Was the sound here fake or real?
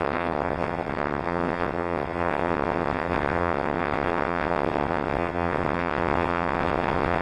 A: fake